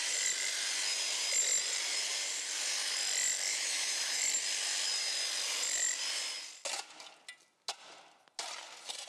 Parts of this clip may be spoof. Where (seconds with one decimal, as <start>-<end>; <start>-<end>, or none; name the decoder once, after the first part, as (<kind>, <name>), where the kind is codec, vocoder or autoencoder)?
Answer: 3.5-4.2 (autoencoder, DAC-VAE)